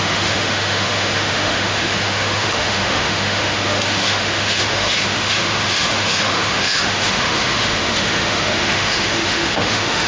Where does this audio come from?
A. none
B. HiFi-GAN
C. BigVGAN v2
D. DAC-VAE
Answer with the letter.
D